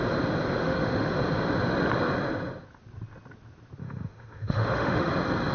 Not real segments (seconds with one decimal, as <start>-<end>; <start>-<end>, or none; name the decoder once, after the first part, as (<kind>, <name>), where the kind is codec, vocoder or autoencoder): 0.6-1.1 (autoencoder, DAC-VAE); 3.8-5.1